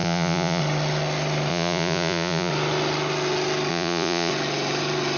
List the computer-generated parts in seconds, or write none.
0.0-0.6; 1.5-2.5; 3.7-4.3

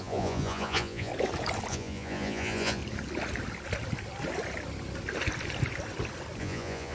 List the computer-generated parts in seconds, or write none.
0.0-1.1; 1.7-2.8; 6.4-6.9

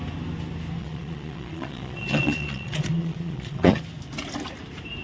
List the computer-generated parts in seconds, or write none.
0.8-3.8

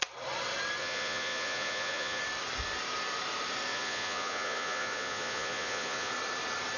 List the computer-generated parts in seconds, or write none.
0.8-2.2; 3.7-6.1

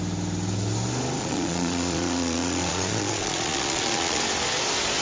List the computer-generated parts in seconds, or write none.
1.2-4.2